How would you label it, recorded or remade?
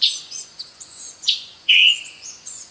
remade